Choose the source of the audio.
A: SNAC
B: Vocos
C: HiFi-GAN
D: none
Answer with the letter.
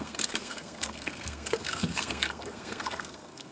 A